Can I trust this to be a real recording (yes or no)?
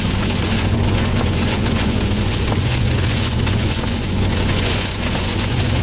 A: no